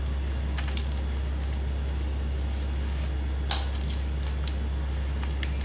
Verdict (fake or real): real